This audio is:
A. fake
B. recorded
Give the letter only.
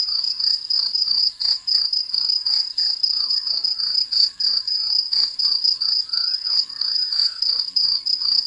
A